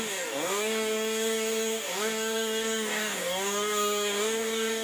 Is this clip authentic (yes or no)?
no